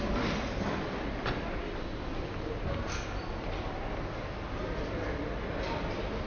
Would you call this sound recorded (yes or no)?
yes